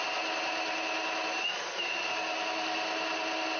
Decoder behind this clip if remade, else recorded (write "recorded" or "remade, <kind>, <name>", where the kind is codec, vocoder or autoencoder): recorded